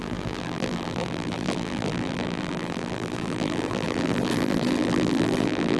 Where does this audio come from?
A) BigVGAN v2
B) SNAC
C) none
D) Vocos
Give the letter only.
A